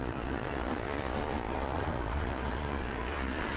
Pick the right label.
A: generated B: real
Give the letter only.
A